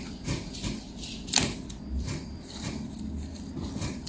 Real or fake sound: fake